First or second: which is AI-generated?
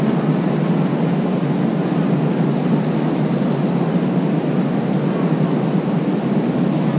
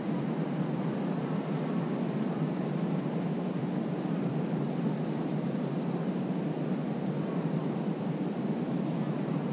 second